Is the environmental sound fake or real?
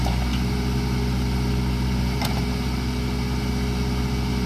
real